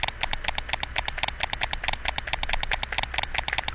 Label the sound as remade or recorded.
recorded